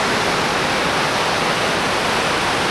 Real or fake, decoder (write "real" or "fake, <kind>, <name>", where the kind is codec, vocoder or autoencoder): real